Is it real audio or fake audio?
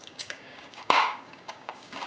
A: fake